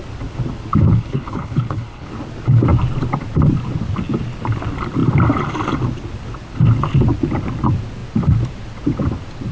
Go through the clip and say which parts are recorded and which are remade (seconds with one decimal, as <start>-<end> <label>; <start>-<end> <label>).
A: 0.0-0.9 recorded; 0.9-2.1 remade; 2.1-9.5 recorded